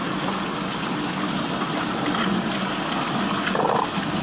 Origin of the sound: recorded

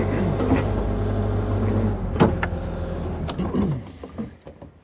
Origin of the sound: recorded